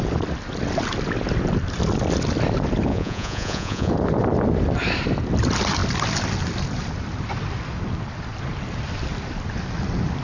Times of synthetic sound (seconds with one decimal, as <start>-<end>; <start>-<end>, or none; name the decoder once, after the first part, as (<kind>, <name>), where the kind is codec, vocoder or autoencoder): 2.9-3.9 (vocoder, Vocos)